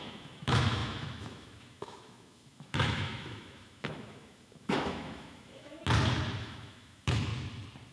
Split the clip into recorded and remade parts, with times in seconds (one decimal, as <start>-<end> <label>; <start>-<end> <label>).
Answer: 0.0-5.8 remade; 5.8-6.4 recorded; 6.4-7.3 remade; 7.3-7.9 recorded